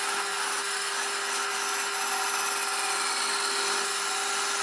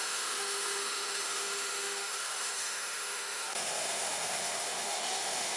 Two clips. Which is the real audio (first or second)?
first